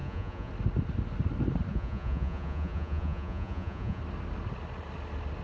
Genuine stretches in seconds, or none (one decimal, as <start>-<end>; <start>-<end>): 0.5-1.7; 4.0-5.4

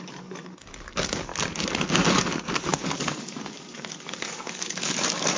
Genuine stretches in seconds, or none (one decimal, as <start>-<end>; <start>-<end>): 1.3-2.1

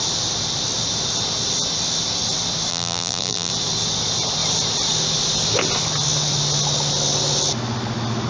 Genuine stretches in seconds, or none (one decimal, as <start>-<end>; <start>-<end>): 0.0-2.7; 3.5-8.3

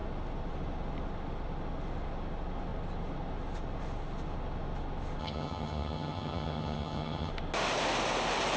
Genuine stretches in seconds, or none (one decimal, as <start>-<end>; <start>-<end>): 0.0-5.2; 7.3-8.6

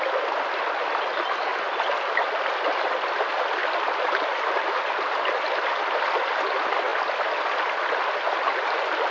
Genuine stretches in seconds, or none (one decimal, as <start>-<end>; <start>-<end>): 0.0-9.1

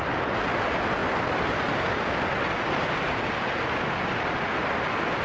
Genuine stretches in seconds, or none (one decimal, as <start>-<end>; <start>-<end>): 0.0-5.2